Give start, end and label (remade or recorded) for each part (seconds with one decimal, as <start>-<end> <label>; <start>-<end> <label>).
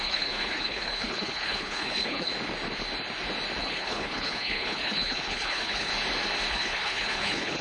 0.0-2.3 remade; 2.3-3.6 recorded; 3.6-5.9 remade; 5.9-6.5 recorded; 6.5-7.6 remade